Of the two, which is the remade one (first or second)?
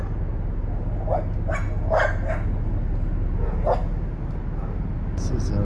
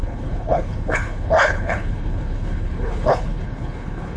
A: second